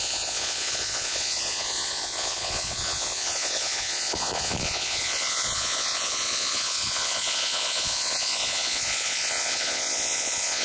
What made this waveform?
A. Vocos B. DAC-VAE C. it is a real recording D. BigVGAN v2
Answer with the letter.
A